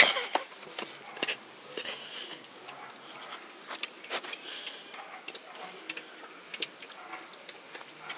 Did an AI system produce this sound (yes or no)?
no